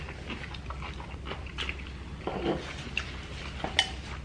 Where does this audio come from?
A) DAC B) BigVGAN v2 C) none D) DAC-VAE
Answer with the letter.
C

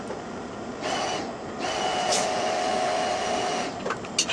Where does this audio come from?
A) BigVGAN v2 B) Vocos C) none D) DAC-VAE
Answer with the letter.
C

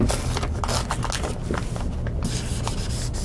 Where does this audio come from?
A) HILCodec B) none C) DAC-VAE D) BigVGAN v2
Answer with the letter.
B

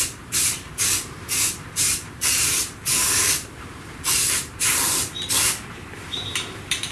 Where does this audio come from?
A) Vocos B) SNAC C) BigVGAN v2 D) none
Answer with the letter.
C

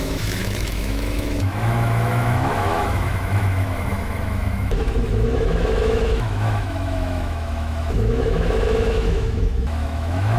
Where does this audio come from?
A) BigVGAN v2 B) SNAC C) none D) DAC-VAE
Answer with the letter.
D